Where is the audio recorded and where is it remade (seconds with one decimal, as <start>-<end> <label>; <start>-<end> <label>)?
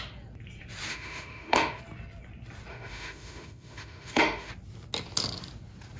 0.0-0.9 recorded; 0.9-1.8 remade; 1.8-2.7 recorded; 2.7-4.5 remade; 4.5-6.0 recorded